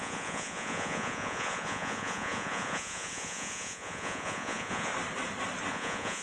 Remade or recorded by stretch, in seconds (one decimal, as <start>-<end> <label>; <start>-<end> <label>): 0.0-4.9 remade; 4.9-5.7 recorded; 5.7-6.2 remade